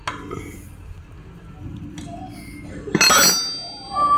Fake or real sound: real